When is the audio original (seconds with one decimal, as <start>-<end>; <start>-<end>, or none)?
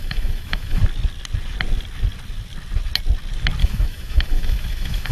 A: 0.8-3.6